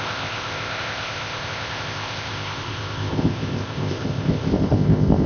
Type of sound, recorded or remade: remade